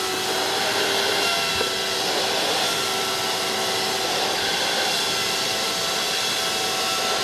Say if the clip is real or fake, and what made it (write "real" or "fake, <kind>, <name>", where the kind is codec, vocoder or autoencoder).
real